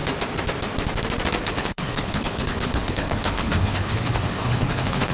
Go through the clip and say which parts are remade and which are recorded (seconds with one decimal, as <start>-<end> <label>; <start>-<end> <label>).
0.0-1.5 recorded; 1.5-5.1 remade